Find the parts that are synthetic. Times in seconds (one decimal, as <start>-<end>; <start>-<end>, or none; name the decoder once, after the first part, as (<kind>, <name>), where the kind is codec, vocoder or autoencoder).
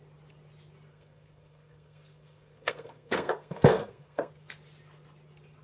0.9-4.3 (codec, SNAC)